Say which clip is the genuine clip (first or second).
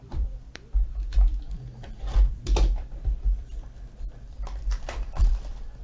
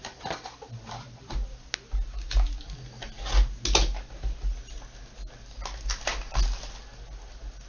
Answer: second